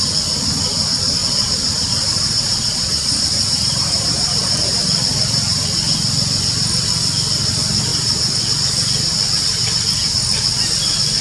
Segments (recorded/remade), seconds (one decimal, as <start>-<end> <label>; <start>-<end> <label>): 0.0-1.2 recorded; 1.2-4.8 remade; 4.8-7.9 recorded; 7.9-8.4 remade; 8.4-11.2 recorded